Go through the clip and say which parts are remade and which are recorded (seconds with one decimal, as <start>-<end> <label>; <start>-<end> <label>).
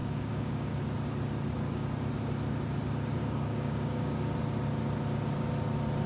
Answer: 0.0-0.7 remade; 0.7-3.2 recorded; 3.2-4.3 remade; 4.3-6.1 recorded